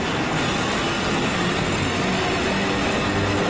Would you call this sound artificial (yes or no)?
no